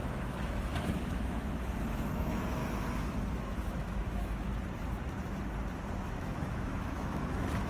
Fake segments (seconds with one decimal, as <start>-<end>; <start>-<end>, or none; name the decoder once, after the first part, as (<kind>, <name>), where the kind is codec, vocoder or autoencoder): 0.0-2.6 (autoencoder, DAC-VAE); 3.3-4.5; 6.0-7.7